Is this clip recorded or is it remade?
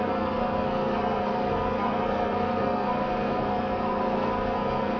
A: remade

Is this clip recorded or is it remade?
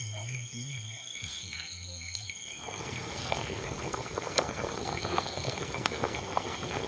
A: remade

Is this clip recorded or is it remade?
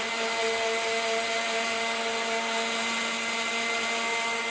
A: recorded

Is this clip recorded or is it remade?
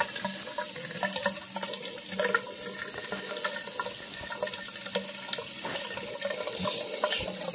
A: recorded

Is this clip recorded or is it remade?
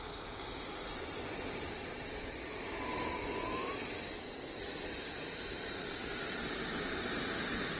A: recorded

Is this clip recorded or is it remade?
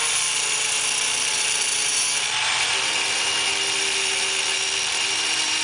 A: recorded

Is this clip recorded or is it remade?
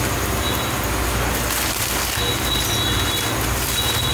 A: recorded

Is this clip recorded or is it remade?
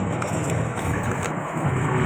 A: remade